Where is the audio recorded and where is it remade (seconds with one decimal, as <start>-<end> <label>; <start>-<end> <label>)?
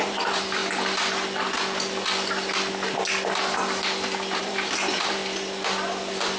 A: 0.0-0.6 remade; 0.6-4.4 recorded; 4.4-5.2 remade; 5.2-6.4 recorded